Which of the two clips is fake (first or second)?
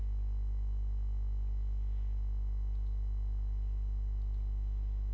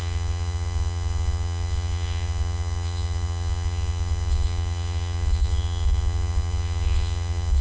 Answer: second